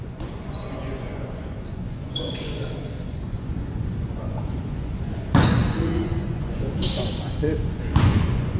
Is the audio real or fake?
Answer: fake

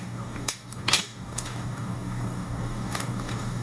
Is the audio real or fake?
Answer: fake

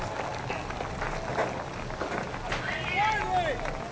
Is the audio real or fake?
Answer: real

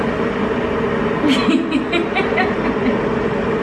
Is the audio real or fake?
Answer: real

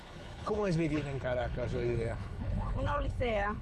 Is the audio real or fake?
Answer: fake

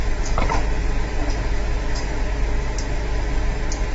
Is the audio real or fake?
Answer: real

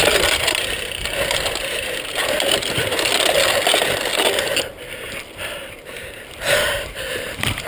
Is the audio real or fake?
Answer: fake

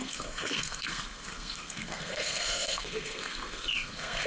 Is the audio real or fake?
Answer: fake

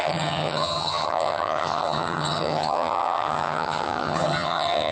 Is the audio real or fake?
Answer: fake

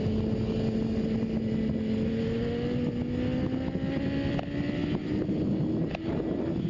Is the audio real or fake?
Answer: real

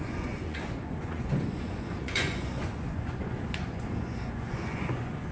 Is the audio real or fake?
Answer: fake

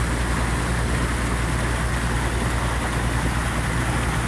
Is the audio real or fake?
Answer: real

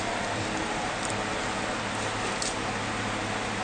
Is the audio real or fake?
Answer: real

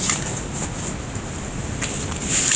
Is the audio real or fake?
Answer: real